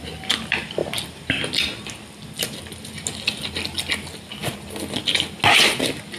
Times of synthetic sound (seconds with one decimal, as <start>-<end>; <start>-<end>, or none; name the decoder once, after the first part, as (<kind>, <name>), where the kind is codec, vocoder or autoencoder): none